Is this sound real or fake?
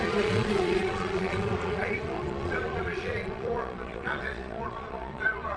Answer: fake